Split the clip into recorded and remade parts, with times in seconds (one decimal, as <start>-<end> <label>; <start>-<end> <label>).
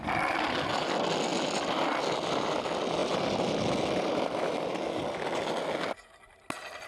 0.0-6.9 recorded